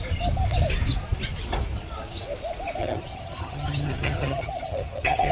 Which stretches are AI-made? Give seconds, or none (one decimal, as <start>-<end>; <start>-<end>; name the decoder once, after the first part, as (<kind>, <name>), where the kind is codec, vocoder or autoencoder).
2.8-5.3 (vocoder, HiFi-GAN)